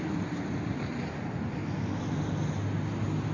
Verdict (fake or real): real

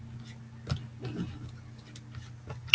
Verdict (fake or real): real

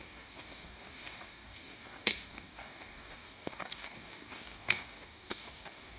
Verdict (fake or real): fake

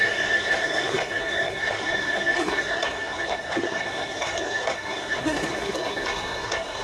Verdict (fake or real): fake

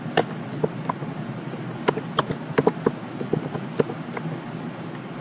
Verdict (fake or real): real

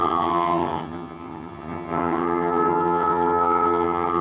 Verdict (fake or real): fake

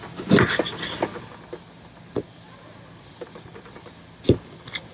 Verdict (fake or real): real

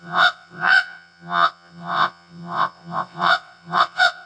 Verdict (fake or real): fake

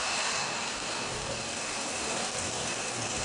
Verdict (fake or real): fake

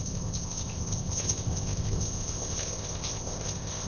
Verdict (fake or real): fake